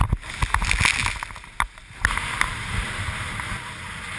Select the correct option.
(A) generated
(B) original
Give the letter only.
B